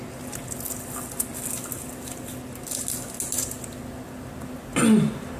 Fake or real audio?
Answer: real